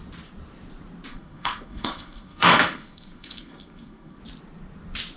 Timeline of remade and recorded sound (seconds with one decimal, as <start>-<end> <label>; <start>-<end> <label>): 0.0-1.1 recorded; 1.1-4.2 remade; 4.2-5.2 recorded